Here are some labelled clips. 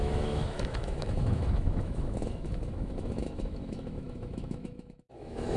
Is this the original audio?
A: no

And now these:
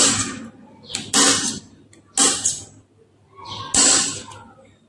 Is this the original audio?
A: yes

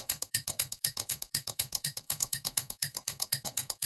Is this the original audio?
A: no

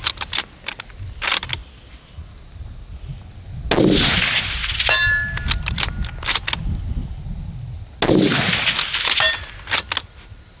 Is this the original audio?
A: yes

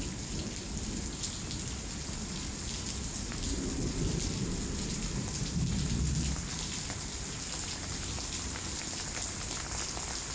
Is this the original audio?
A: yes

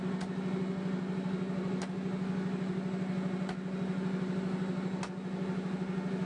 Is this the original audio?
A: yes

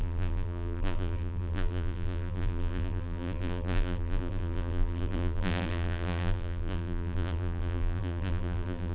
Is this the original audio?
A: no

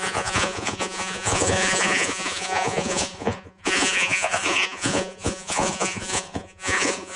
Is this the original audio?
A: no